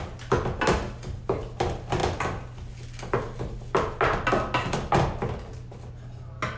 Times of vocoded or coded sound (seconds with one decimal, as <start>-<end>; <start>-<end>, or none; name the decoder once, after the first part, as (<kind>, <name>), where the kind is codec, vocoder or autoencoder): none